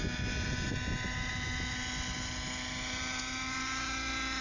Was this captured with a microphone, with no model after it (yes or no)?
yes